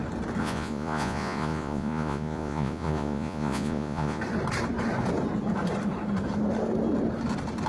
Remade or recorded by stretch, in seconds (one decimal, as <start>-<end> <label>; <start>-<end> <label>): 0.0-0.4 recorded; 0.4-4.2 remade; 4.2-7.7 recorded